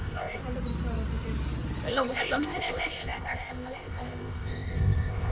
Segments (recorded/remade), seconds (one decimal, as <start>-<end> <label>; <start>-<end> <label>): 0.0-0.4 remade; 0.4-1.9 recorded; 1.9-5.3 remade